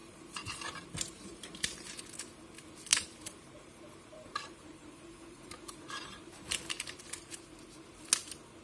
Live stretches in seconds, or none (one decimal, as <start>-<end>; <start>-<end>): 2.1-2.9; 7.4-8.6